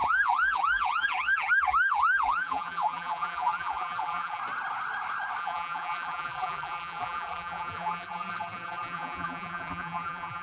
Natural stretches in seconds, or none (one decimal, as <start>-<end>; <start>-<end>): 4.4-5.4